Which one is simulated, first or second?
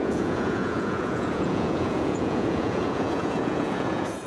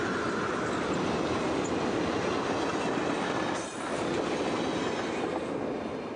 first